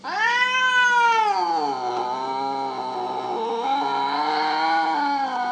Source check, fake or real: real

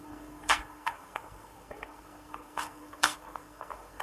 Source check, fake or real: fake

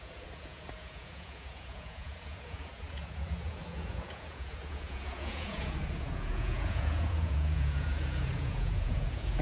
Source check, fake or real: fake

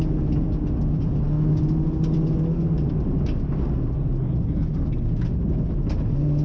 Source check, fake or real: real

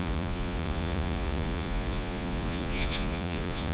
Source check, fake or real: fake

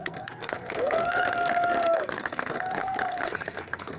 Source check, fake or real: fake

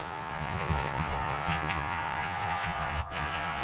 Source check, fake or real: fake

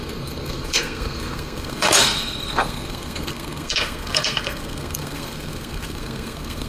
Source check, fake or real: fake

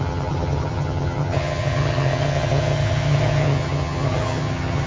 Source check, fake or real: fake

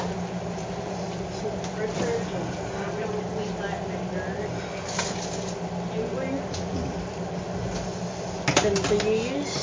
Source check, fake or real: real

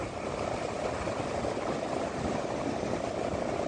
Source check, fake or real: real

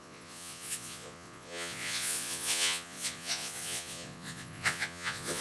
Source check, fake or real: fake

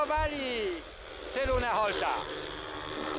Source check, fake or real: real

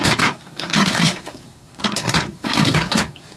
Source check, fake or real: fake